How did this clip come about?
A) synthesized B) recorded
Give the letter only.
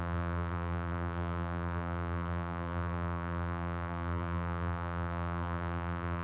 A